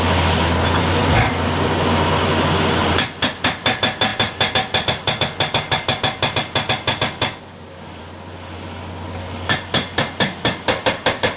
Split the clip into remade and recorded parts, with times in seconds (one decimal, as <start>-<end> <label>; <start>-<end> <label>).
0.0-11.4 recorded